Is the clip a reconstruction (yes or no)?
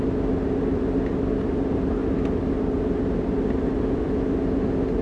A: no